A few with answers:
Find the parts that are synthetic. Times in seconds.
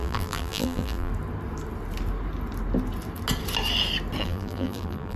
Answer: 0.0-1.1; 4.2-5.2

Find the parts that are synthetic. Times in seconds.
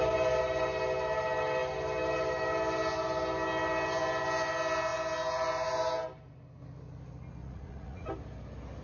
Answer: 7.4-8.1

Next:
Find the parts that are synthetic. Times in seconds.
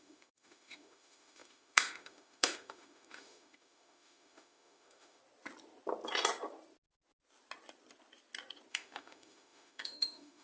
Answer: 0.0-5.2; 8.7-10.4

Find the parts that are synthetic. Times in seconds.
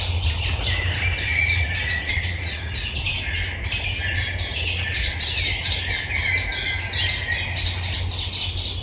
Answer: 1.3-3.0; 4.5-5.4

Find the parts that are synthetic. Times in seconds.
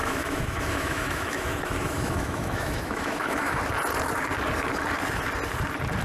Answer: 0.0-3.6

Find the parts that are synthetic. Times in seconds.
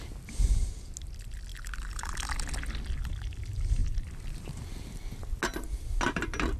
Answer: 3.8-4.5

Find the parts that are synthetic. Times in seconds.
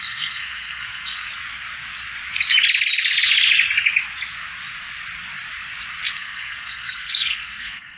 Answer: 0.0-1.3; 6.1-8.0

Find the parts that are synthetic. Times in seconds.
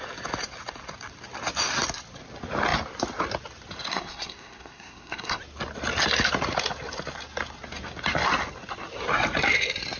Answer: 3.9-5.4